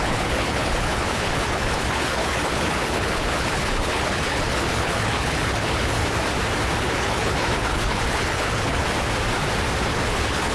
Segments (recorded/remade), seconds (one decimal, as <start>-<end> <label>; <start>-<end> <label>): 0.0-6.0 remade; 6.0-6.8 recorded; 6.8-8.8 remade; 8.8-9.8 recorded; 9.8-10.5 remade